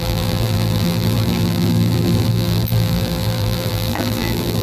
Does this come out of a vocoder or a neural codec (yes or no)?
yes